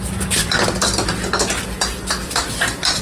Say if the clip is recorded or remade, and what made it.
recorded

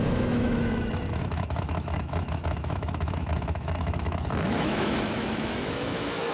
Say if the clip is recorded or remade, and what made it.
remade, autoencoder, DAC-VAE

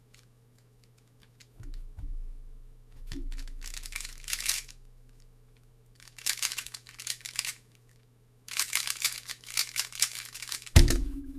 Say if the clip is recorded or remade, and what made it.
remade, autoencoder, DAC-VAE